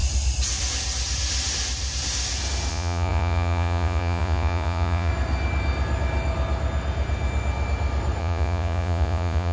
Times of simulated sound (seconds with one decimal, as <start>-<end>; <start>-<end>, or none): 2.7-5.1; 8.2-9.5